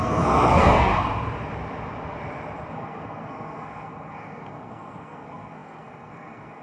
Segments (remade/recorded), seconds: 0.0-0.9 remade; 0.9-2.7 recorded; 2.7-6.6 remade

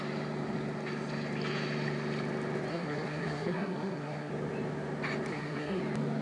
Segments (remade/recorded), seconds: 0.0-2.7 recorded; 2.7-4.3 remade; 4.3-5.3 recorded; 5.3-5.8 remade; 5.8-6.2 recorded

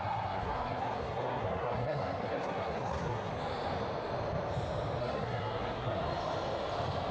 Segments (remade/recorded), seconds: 0.0-3.3 remade; 3.3-5.0 recorded; 5.0-6.0 remade; 6.0-7.1 recorded

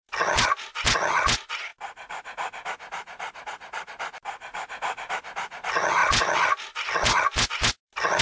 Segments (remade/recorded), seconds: 0.0-8.2 recorded

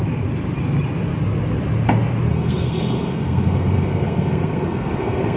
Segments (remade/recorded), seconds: 0.0-2.3 recorded; 2.3-5.4 remade